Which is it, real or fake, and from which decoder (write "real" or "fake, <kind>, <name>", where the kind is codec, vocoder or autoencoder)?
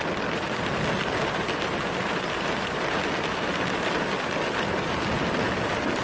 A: real